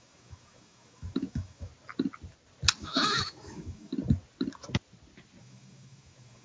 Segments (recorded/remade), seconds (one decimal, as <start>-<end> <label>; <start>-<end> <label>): 0.0-1.7 remade; 1.7-2.8 recorded; 2.8-3.9 remade; 3.9-5.4 recorded; 5.4-6.4 remade